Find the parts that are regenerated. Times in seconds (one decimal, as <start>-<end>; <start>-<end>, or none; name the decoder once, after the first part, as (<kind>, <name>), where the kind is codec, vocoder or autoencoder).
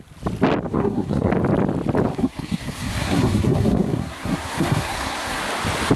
0.7-1.3 (codec, SNAC); 2.1-5.4